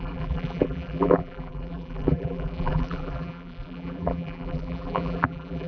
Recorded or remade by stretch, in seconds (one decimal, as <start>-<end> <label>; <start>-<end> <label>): 0.0-5.7 remade